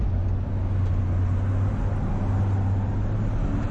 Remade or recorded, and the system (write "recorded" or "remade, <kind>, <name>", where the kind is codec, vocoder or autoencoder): recorded